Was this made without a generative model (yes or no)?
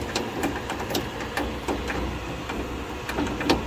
yes